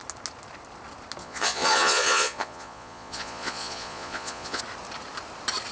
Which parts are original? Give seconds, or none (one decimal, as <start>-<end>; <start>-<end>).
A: 0.0-1.2; 4.6-5.7